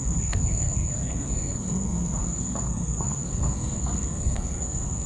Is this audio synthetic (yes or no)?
yes